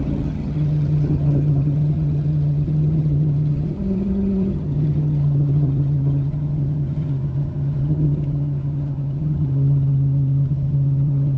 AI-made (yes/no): yes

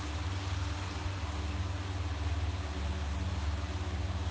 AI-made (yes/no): no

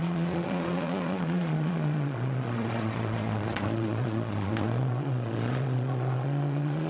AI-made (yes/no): yes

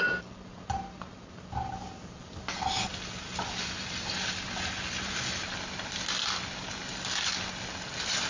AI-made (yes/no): no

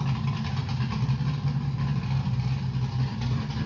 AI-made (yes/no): no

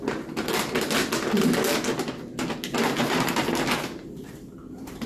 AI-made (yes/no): no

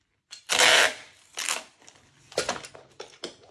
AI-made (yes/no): yes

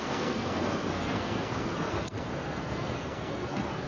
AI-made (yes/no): yes